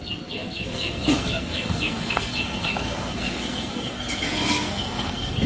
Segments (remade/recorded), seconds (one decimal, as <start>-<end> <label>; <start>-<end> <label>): 0.0-5.5 remade